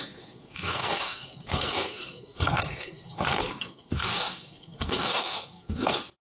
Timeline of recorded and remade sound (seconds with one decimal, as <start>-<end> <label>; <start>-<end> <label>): 0.0-6.2 remade